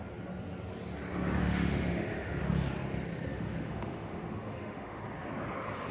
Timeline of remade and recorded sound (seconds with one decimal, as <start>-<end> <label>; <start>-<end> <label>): 0.0-1.4 recorded; 1.4-2.4 remade; 2.4-3.3 recorded; 3.3-5.0 remade; 5.0-5.9 recorded

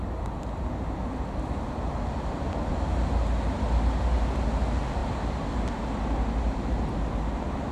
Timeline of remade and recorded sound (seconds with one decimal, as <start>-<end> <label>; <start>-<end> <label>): 0.0-7.7 recorded